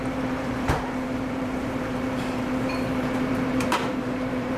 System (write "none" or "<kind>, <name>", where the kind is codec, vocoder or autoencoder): vocoder, BigVGAN v2